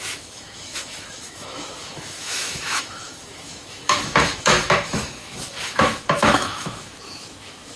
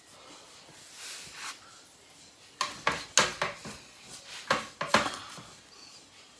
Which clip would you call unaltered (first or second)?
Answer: second